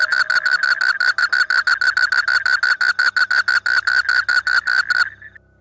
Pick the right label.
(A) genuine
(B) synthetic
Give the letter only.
A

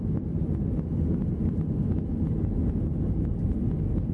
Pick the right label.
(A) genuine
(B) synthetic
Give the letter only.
A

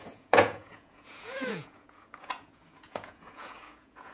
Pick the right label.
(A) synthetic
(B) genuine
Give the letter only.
A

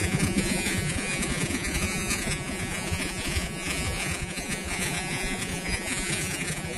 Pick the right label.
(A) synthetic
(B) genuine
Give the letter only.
A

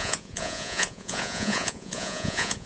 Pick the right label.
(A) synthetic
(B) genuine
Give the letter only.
A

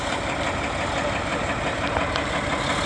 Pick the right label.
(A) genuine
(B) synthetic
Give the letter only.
A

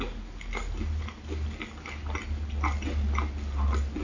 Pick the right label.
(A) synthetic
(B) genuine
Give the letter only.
B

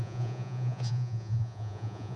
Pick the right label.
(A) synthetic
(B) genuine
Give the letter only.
A